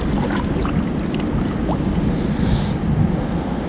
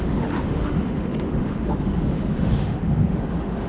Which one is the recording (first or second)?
first